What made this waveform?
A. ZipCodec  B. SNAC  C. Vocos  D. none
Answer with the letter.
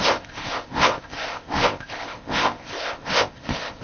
A